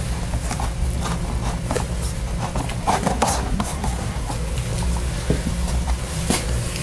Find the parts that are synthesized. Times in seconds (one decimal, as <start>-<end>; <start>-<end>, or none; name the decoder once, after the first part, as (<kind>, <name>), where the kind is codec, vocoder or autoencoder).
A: 2.8-4.3 (codec, SNAC)